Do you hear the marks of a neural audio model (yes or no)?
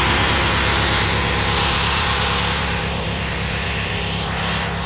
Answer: yes